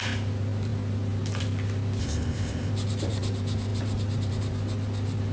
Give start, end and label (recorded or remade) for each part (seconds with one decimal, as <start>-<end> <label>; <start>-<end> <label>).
0.0-2.0 recorded; 2.0-2.7 remade; 2.7-5.3 recorded